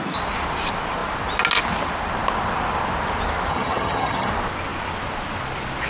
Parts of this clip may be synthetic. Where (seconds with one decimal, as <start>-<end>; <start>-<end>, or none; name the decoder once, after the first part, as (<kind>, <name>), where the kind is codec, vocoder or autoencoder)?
3.5-4.3 (vocoder, HiFi-GAN)